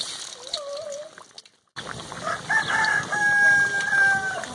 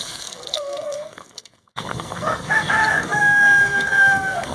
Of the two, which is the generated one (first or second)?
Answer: second